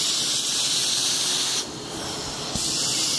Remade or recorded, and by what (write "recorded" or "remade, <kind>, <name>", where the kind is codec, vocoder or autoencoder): recorded